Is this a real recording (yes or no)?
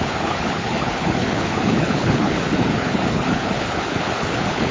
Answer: no